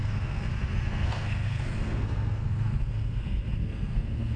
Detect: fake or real fake